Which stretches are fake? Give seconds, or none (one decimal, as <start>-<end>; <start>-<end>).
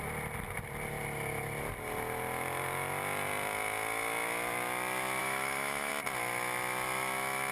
5.2-5.9